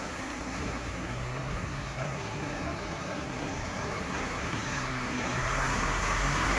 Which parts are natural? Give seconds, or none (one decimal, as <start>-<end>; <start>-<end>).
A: none